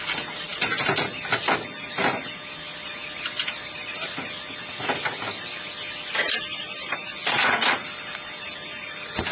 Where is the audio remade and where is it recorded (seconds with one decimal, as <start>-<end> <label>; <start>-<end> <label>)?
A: 0.0-9.3 recorded